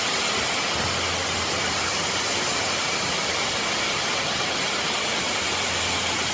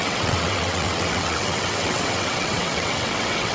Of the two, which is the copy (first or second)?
second